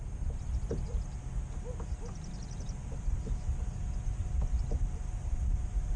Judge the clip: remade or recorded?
recorded